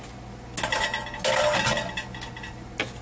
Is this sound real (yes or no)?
yes